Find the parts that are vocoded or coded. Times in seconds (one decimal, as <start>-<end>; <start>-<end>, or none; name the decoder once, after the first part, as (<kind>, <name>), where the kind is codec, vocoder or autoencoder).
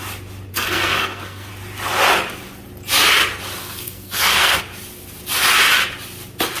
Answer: 0.5-1.5 (codec, SNAC); 3.6-4.6